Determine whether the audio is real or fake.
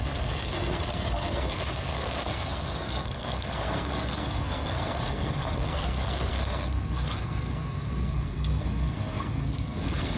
fake